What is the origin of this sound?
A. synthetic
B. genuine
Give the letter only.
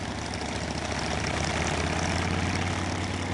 B